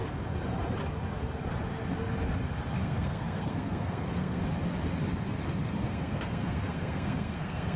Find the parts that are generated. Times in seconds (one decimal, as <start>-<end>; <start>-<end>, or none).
2.8-4.4; 5.8-7.8